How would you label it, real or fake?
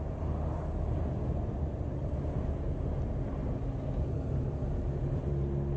real